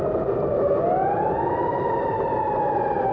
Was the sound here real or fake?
real